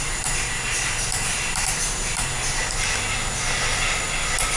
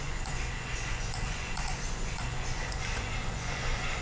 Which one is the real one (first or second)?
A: first